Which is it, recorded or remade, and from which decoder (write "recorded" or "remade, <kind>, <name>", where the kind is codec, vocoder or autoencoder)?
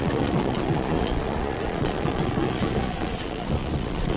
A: remade, vocoder, Vocos